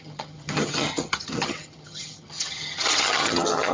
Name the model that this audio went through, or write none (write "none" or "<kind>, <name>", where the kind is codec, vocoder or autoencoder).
vocoder, HiFi-GAN